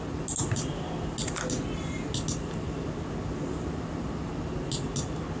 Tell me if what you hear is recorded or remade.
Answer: recorded